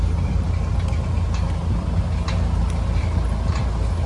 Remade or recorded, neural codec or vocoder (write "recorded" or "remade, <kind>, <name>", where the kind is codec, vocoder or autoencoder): recorded